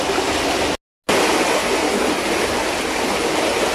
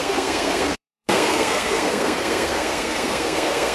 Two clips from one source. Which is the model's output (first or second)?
second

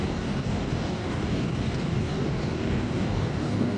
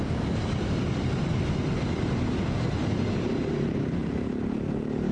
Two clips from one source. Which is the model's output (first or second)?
first